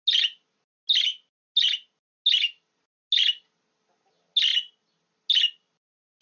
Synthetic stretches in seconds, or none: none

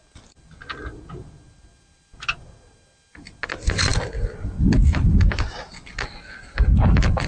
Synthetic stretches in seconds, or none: none